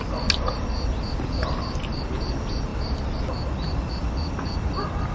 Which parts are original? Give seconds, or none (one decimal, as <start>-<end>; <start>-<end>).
0.0-5.1

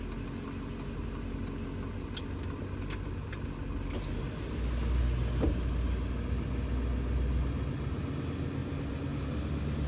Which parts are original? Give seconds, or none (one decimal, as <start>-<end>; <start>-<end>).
0.0-9.9

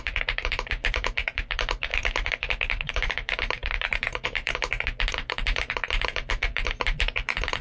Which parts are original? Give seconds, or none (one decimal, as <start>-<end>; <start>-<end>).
4.6-5.1

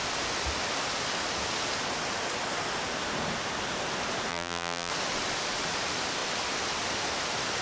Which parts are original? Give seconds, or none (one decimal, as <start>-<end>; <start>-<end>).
0.0-4.3; 4.9-7.6

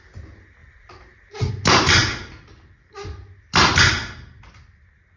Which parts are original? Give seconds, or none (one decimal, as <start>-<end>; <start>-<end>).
0.0-0.6; 1.5-5.2

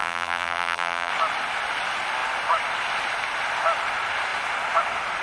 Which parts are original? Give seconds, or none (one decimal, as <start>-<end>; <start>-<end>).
1.1-5.2